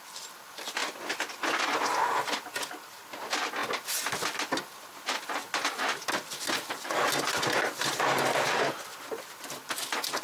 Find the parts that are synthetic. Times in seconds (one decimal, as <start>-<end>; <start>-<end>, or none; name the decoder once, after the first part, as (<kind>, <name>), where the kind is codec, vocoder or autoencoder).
8.9-9.5 (vocoder, BigVGAN v2)